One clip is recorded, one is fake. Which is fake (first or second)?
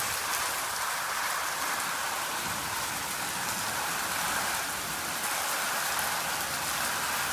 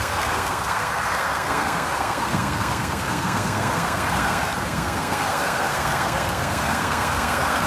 second